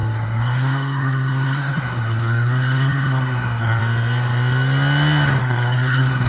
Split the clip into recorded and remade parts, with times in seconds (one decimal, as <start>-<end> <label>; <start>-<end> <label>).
0.0-3.8 remade; 3.8-5.4 recorded; 5.4-6.3 remade

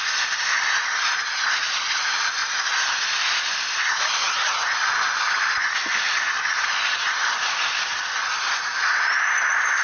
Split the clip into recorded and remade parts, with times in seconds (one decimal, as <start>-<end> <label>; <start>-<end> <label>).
0.0-9.8 recorded

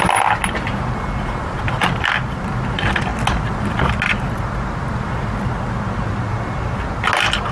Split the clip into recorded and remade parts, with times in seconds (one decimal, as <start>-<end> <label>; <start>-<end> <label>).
0.0-7.5 recorded

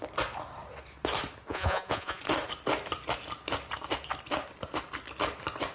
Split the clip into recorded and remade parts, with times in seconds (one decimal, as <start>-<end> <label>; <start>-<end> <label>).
0.0-1.5 recorded; 1.5-2.2 remade; 2.2-5.7 recorded